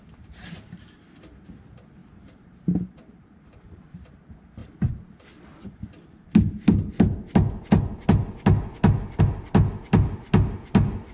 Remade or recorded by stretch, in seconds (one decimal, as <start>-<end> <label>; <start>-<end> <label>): 0.0-2.0 recorded; 2.0-3.9 remade; 3.9-11.1 recorded